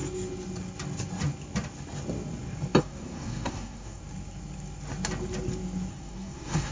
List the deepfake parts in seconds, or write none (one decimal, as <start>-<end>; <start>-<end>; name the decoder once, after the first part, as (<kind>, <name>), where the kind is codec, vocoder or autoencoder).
2.8-4.0 (codec, SNAC); 5.9-6.7